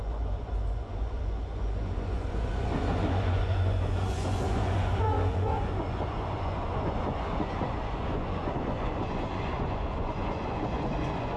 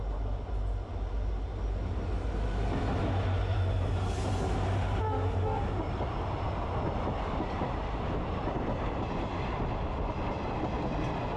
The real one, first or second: second